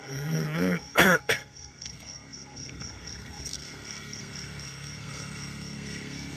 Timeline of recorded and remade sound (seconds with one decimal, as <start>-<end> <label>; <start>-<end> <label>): 0.0-6.4 remade